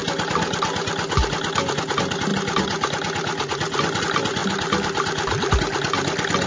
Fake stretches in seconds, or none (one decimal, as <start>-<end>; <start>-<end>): none

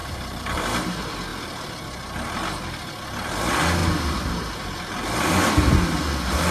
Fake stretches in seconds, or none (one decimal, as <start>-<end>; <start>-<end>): 0.0-0.6; 3.8-5.5

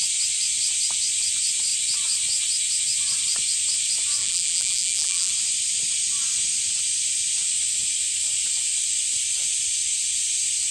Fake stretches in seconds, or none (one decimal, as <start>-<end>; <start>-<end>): 4.2-5.3

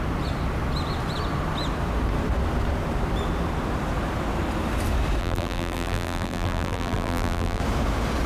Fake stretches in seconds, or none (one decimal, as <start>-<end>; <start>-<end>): 5.2-7.6

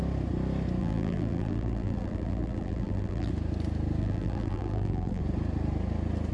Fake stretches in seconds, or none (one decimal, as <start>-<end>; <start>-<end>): 0.8-3.3; 4.0-5.2

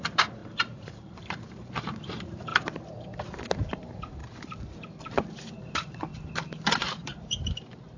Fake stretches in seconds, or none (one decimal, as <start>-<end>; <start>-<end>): 0.0-2.5; 3.7-4.2; 5.0-6.1; 6.8-8.0